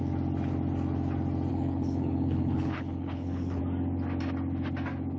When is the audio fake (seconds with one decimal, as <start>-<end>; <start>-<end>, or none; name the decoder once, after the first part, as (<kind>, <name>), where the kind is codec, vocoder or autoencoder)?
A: 1.5-3.6 (codec, HILCodec)